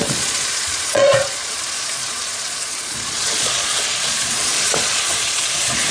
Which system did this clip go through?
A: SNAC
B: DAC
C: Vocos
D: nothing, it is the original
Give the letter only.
C